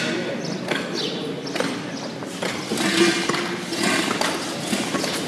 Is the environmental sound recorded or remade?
recorded